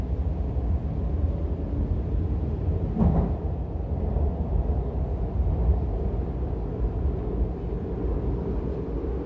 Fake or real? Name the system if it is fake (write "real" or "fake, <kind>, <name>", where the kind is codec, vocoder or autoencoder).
real